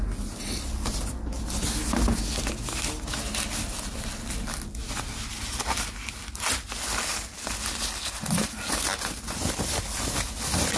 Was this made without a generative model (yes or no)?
yes